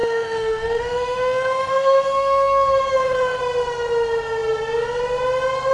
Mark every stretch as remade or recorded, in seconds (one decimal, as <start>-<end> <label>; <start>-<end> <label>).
0.0-3.4 remade; 3.4-5.7 recorded